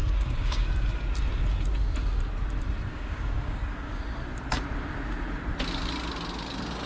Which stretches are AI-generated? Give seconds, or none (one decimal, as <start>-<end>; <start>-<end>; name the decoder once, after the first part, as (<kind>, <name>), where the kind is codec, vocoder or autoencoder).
0.0-0.7 (codec, DAC); 2.9-4.0